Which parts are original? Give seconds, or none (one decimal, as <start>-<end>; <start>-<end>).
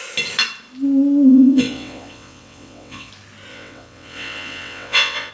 0.0-1.3; 3.1-3.5